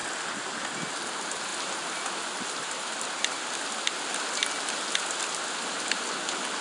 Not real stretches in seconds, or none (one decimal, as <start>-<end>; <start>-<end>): none